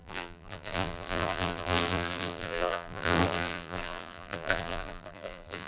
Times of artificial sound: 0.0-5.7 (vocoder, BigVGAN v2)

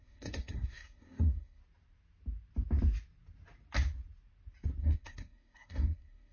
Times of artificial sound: 0.0-1.6 (codec, SNAC); 4.8-6.3

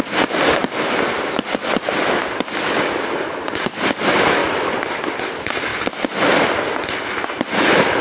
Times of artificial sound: none

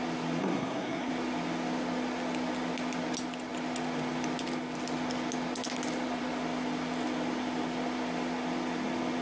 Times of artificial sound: 0.4-1.1 (codec, SNAC)